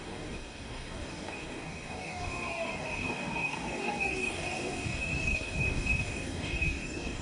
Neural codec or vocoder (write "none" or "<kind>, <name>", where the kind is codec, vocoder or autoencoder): codec, DAC